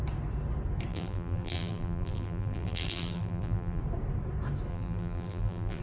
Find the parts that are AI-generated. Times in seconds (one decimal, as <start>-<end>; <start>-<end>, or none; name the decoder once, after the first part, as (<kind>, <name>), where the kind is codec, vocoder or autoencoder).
0.9-3.8 (vocoder, BigVGAN v2); 4.7-5.8